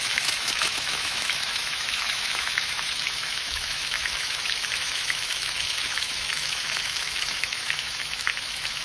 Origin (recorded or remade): remade